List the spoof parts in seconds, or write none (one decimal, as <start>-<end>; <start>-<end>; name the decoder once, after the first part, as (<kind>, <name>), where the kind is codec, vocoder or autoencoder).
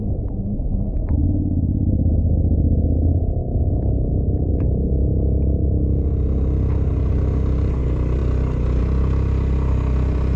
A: 0.7-1.2 (autoencoder, DAC-VAE); 3.4-4.1